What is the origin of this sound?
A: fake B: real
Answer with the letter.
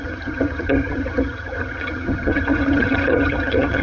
A